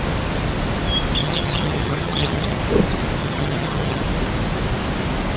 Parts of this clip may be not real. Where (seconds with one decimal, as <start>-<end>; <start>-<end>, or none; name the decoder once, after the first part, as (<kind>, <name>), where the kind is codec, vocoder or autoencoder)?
1.2-2.6 (vocoder, HiFi-GAN); 3.2-4.0